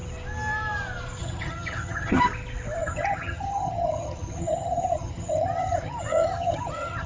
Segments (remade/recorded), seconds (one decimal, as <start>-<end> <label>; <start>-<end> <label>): 0.0-1.2 recorded; 1.2-2.2 remade; 2.2-2.8 recorded; 2.8-7.1 remade